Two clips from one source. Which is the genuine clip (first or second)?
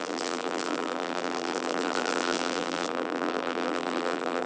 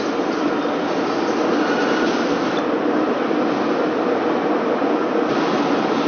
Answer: second